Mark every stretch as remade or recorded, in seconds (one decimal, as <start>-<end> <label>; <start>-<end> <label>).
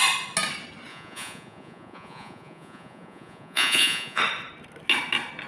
0.0-0.9 recorded; 0.9-4.2 remade; 4.2-5.5 recorded